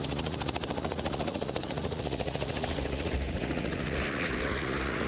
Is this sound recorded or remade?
remade